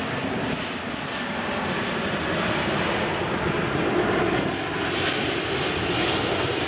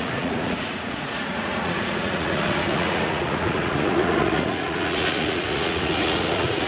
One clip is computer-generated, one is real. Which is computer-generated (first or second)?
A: second